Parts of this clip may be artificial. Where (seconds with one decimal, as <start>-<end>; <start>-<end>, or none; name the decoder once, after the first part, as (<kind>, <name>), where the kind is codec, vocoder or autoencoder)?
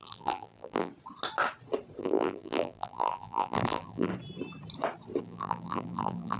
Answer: 0.0-0.9 (vocoder, BigVGAN v2); 2.0-4.1; 5.2-6.4